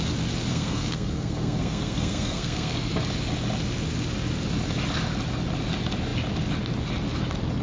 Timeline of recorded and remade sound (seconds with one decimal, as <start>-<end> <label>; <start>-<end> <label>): 0.0-0.5 recorded; 0.5-2.9 remade; 2.9-7.6 recorded